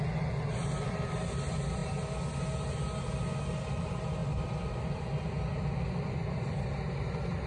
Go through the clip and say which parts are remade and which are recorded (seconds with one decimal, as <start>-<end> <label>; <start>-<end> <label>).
0.0-1.8 remade; 1.8-3.4 recorded; 3.4-4.2 remade; 4.2-5.3 recorded; 5.3-7.5 remade